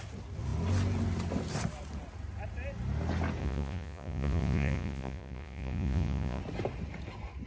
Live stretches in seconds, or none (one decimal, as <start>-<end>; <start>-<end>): 0.0-3.4; 6.4-7.5